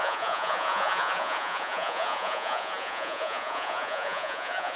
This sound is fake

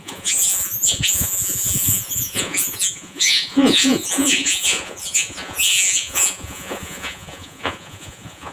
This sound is fake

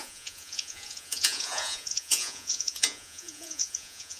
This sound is fake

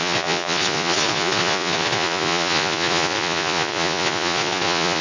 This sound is fake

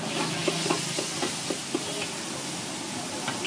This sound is real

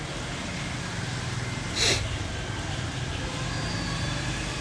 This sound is real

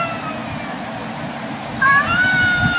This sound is real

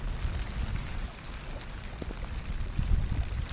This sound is real